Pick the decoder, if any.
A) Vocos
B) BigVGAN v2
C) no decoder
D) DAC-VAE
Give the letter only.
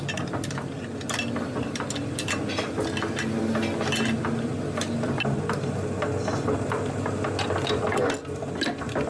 C